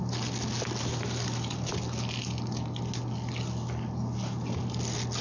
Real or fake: real